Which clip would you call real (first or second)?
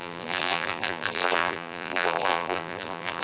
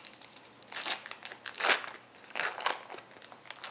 second